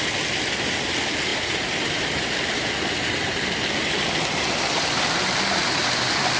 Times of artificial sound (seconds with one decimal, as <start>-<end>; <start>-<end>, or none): none